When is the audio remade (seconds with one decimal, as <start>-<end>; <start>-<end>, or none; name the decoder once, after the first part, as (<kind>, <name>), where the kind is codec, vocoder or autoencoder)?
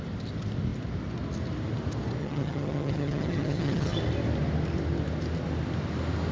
2.2-4.0 (vocoder, HiFi-GAN)